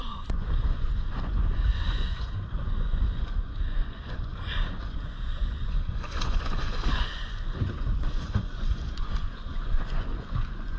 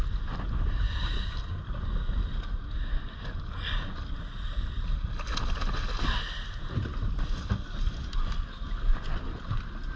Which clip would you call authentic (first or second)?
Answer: second